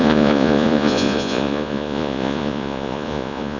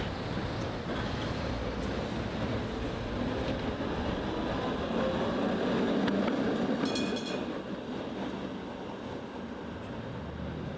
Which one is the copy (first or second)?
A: first